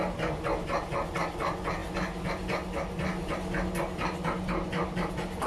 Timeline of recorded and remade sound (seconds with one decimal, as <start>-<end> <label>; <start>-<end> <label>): 0.0-5.5 recorded